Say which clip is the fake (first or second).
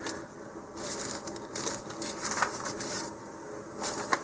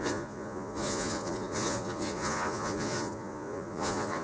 second